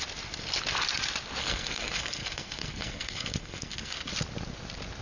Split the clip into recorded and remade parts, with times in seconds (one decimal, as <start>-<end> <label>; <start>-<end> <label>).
0.0-1.4 recorded; 1.4-4.1 remade; 4.1-5.0 recorded